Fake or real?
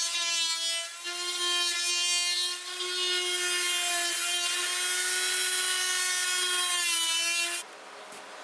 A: real